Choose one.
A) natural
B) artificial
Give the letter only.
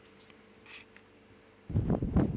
A